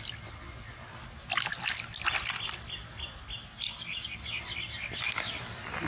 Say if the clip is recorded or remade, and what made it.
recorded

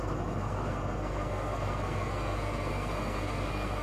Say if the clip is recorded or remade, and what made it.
remade, codec, SNAC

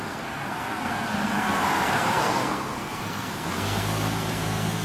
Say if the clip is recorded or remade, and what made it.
remade, codec, SNAC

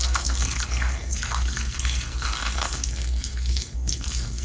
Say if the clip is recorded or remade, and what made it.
remade, codec, SNAC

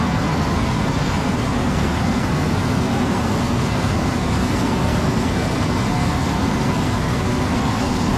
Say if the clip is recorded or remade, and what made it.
remade, codec, SNAC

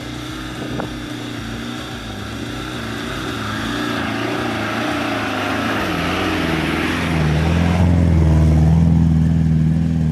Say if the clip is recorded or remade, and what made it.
recorded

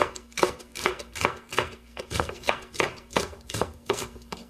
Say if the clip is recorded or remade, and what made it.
remade, codec, SNAC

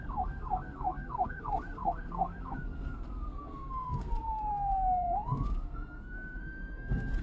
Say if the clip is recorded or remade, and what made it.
remade, codec, SNAC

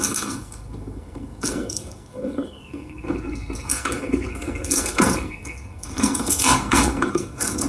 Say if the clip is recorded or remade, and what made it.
remade, codec, SNAC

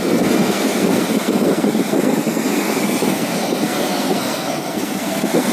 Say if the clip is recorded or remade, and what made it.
remade, codec, SNAC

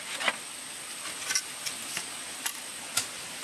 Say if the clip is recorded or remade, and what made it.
recorded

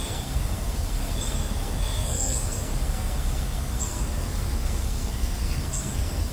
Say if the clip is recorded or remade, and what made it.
remade, codec, SNAC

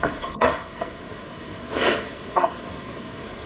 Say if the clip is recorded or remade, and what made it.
remade, codec, SNAC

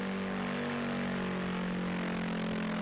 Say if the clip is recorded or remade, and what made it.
recorded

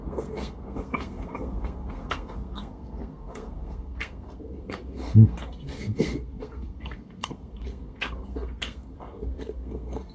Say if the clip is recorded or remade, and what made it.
remade, codec, SNAC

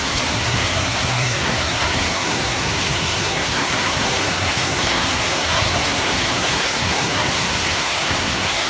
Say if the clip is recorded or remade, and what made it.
remade, codec, SNAC